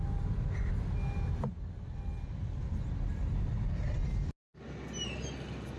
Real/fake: real